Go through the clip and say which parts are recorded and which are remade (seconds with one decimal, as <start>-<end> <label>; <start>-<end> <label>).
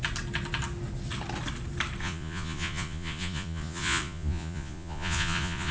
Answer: 0.0-2.0 recorded; 2.0-5.7 remade